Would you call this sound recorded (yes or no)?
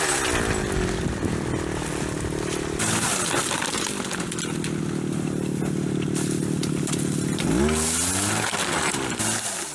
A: yes